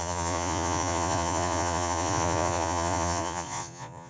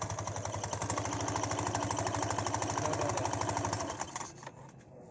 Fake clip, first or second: first